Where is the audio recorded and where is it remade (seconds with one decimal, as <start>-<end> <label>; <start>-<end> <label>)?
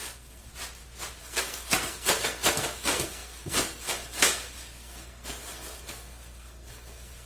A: 0.0-0.5 remade; 0.5-1.2 recorded; 1.2-7.3 remade